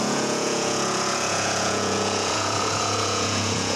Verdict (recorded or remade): remade